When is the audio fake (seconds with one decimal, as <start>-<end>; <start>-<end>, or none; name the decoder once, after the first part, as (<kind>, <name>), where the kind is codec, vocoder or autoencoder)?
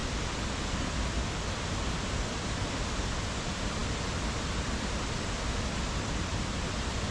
none